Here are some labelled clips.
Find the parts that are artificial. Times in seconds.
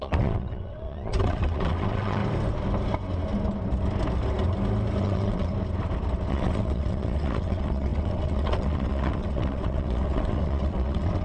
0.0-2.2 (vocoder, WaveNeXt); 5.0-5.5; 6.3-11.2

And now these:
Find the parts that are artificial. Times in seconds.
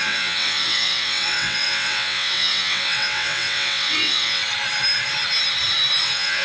0.0-4.4 (vocoder, WaveNeXt); 6.0-6.4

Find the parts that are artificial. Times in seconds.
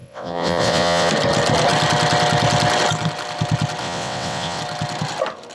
0.0-1.1 (vocoder, WaveNeXt); 3.8-4.6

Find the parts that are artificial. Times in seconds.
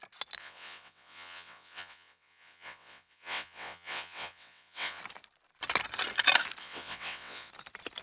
0.4-5.0 (vocoder, WaveNeXt); 6.6-7.5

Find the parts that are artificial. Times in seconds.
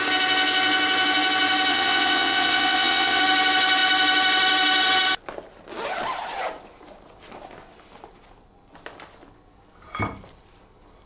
1.7-3.2 (vocoder, WaveNeXt)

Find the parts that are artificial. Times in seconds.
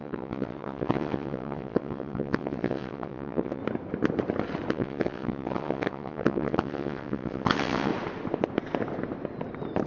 0.0-3.6 (vocoder, WaveNeXt); 4.7-7.9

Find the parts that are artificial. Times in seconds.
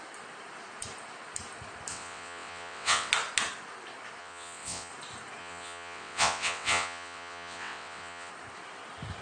1.9-3.1 (vocoder, WaveNeXt); 4.2-4.9; 5.4-8.3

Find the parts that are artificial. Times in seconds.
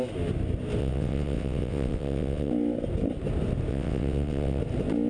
0.8-2.5 (vocoder, WaveNeXt); 3.7-4.6